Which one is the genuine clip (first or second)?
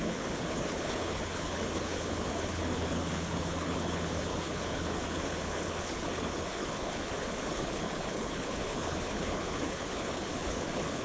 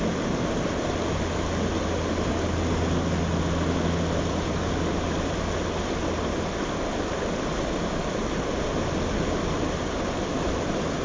second